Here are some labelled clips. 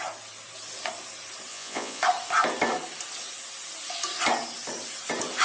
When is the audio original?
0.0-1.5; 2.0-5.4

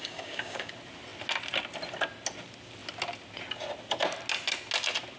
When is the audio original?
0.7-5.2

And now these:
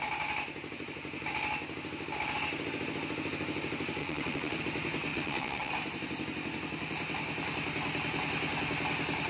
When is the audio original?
0.0-4.0; 4.6-5.1; 5.7-9.3